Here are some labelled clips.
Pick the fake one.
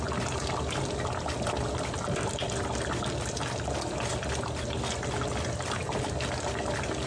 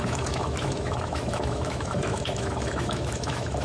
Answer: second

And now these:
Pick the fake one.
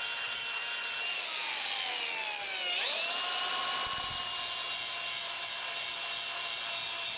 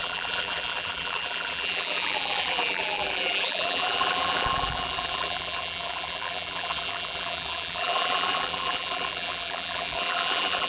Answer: second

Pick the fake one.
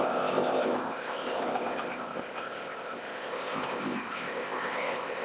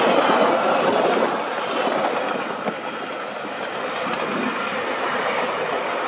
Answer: first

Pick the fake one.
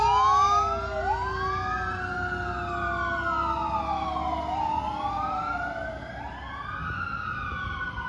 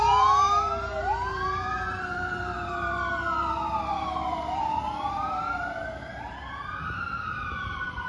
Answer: second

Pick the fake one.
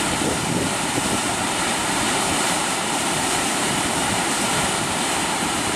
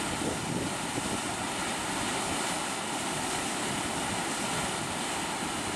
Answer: first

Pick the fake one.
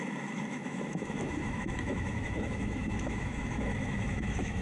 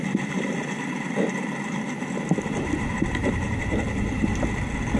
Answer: first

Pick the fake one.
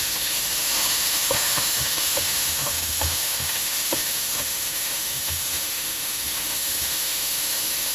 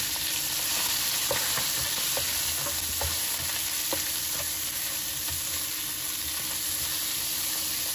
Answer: first